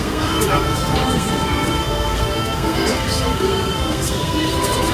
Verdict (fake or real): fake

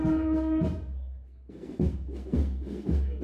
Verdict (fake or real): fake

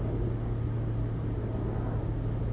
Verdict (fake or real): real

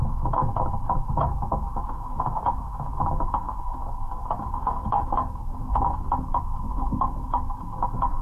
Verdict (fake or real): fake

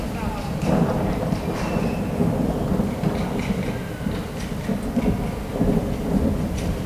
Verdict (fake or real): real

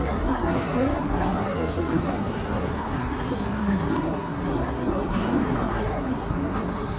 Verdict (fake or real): fake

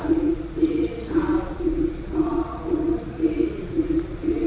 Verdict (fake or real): fake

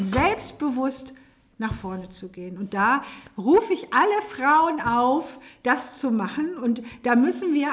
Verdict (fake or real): real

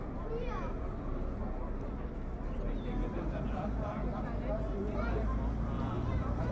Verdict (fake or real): real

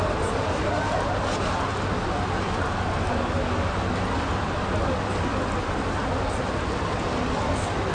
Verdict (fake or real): real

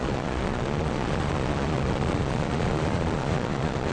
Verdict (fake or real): fake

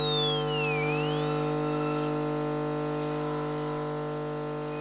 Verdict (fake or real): real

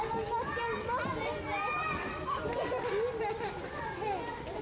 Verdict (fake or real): real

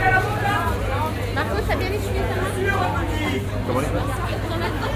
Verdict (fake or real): real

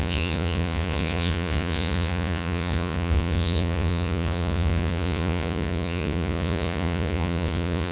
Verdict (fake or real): fake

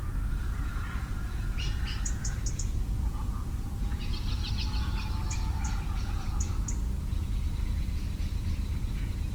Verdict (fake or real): fake